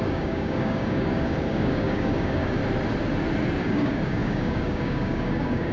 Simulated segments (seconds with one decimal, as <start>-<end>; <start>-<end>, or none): 0.0-2.6; 3.6-5.7

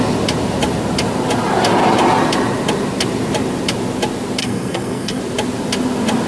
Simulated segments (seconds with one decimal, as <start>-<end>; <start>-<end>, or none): 4.4-5.2